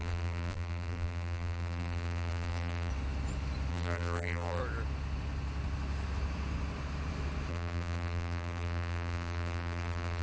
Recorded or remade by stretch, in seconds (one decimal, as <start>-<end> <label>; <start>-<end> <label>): 0.0-2.9 remade; 2.9-3.7 recorded; 3.7-4.6 remade; 4.6-7.5 recorded; 7.5-10.2 remade